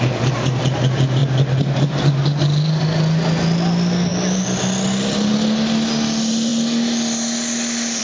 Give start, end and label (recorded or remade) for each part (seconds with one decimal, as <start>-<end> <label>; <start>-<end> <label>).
0.0-8.0 recorded